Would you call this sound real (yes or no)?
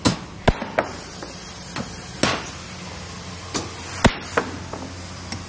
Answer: yes